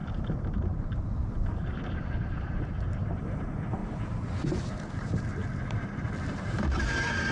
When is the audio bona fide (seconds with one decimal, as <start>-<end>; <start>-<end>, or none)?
3.8-4.4; 5.4-6.3